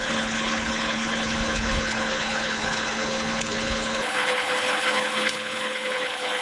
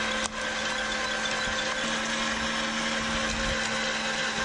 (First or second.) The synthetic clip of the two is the first